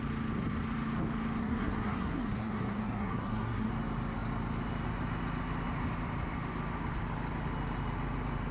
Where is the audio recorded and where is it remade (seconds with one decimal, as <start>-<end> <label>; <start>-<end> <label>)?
0.0-1.4 recorded; 1.4-3.7 remade; 3.7-8.5 recorded